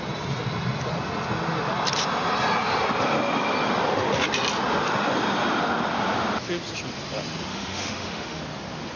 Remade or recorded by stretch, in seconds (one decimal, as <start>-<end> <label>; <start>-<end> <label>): 0.0-7.5 recorded; 7.5-8.4 remade; 8.4-9.0 recorded